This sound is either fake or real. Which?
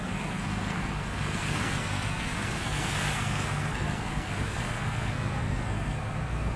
fake